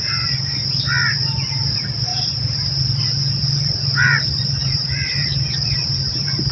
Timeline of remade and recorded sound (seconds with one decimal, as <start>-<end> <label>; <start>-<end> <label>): 0.0-2.1 recorded; 2.1-3.0 remade; 3.0-3.4 recorded; 3.4-6.5 remade